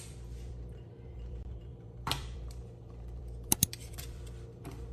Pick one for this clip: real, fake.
fake